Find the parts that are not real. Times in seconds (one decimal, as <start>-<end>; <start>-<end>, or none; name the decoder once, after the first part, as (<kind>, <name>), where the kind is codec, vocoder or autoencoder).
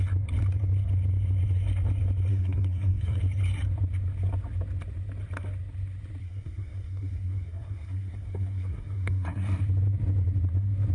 2.3-3.2 (codec, SNAC); 6.2-9.6